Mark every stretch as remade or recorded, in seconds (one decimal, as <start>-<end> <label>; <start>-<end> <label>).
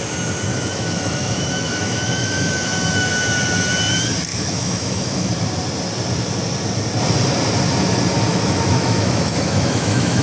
0.0-0.5 recorded; 0.5-3.1 remade; 3.1-4.3 recorded; 4.3-5.3 remade; 5.3-8.3 recorded; 8.3-10.2 remade